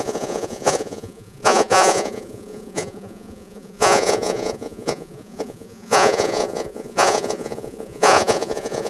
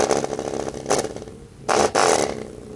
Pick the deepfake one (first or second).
first